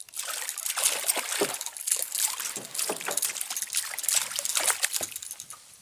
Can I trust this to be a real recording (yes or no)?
yes